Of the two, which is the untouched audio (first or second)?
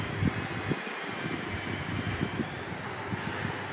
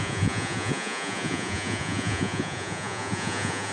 first